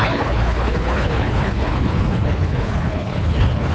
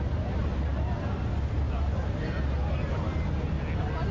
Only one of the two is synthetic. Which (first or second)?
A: first